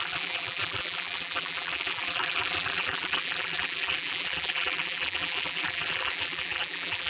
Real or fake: fake